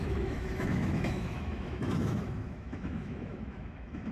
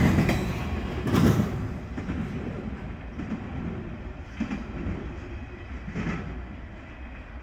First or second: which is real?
second